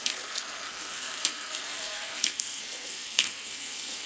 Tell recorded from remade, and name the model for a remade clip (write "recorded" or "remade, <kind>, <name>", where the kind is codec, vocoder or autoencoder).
remade, codec, SNAC